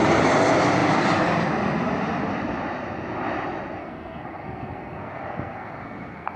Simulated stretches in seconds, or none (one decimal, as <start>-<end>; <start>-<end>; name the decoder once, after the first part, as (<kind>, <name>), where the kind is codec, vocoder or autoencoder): 3.8-6.4 (codec, SNAC)